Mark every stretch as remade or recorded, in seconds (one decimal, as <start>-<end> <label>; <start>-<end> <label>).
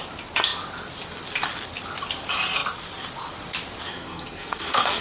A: 0.0-3.9 recorded; 3.9-5.0 remade